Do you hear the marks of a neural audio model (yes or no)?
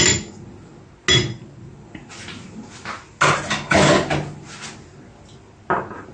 no